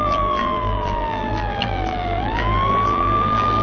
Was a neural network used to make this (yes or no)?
yes